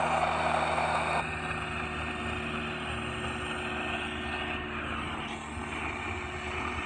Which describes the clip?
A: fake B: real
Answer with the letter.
B